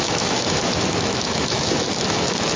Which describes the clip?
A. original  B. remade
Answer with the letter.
B